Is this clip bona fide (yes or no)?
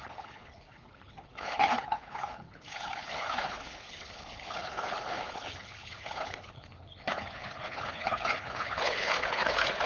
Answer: no